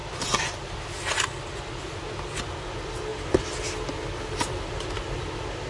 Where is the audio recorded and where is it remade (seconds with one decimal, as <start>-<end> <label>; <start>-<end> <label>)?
0.0-5.7 recorded